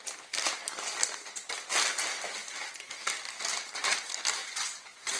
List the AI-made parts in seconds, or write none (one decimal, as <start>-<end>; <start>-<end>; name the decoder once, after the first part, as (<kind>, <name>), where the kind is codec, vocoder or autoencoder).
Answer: 4.4-5.2 (vocoder, Vocos)